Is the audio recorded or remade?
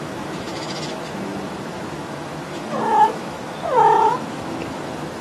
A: remade